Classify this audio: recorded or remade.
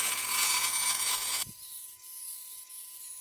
remade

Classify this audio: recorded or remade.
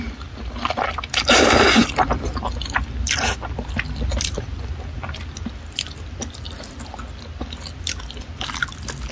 recorded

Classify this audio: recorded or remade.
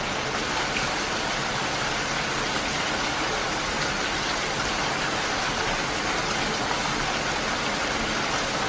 recorded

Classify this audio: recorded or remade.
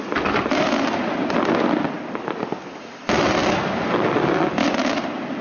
recorded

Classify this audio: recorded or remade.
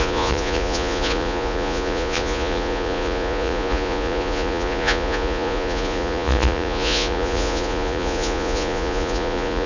remade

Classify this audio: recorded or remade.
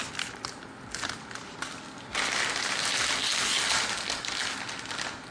recorded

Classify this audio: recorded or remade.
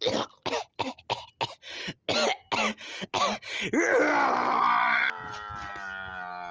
recorded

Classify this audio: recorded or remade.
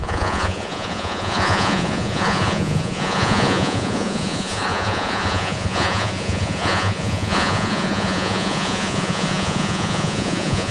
remade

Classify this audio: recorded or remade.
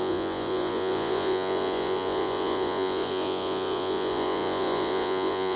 remade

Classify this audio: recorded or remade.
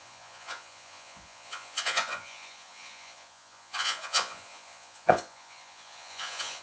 remade